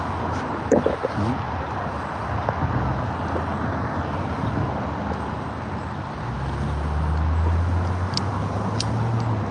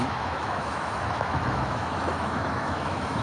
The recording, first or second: first